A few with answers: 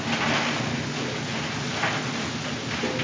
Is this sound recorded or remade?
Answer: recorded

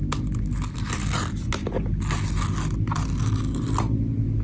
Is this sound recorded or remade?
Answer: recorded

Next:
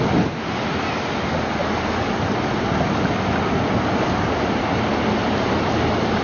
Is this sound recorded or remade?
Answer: recorded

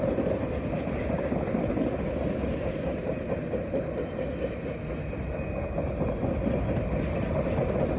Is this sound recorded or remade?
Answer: recorded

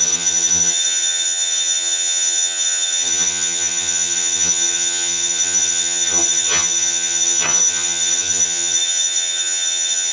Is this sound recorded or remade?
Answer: remade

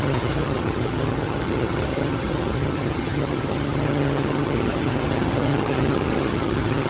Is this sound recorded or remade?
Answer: remade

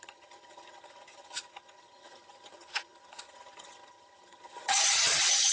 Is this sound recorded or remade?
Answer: remade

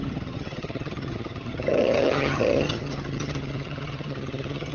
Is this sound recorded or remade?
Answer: remade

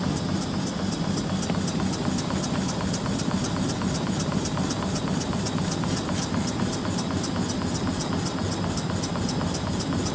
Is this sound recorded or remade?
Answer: recorded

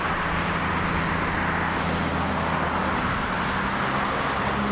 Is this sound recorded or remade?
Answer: recorded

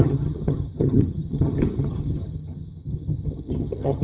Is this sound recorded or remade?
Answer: remade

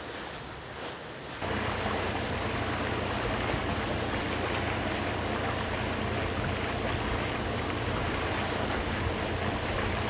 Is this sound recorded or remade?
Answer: recorded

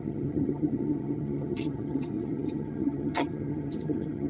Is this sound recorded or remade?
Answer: remade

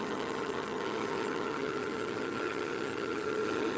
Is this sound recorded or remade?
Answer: remade